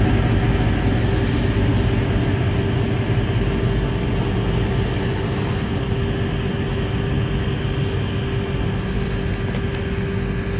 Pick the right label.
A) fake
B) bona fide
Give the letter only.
B